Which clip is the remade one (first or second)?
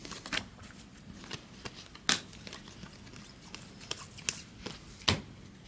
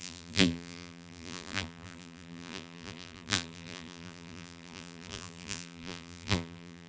second